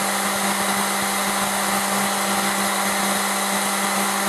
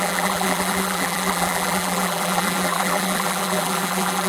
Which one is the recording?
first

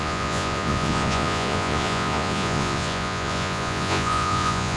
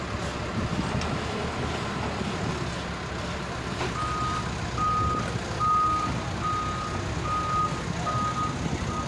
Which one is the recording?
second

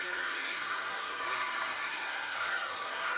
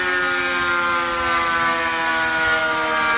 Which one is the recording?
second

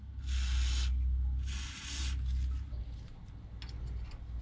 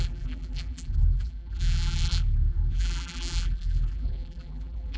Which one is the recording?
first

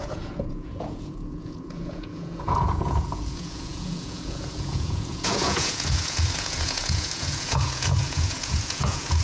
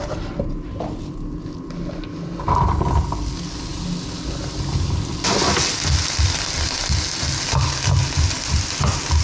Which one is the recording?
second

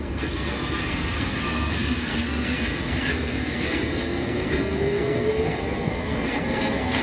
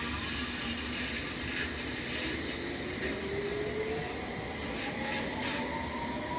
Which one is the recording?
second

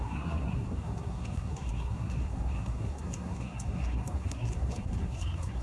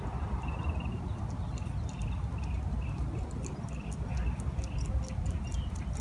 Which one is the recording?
second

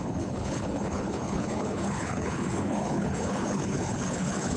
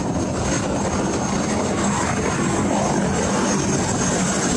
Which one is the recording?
second